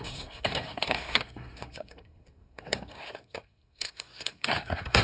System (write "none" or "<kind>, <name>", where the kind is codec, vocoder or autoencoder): codec, SNAC